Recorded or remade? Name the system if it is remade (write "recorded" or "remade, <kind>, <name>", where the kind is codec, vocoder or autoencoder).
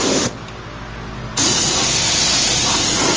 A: recorded